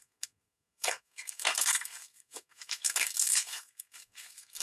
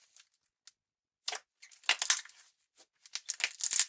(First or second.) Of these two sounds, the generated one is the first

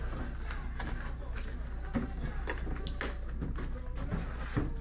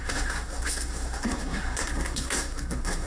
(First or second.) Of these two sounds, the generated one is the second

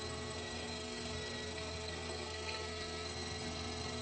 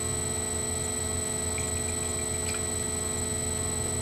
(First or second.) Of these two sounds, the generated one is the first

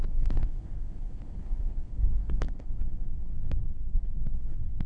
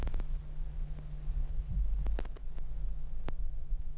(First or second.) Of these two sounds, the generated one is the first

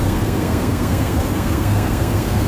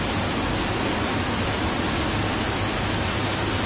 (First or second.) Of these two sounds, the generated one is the first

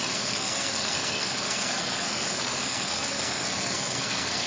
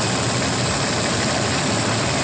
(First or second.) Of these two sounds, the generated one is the first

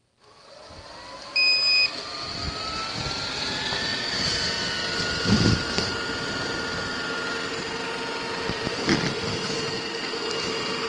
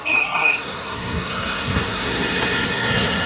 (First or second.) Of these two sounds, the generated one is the second